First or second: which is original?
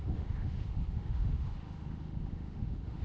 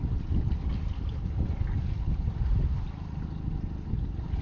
second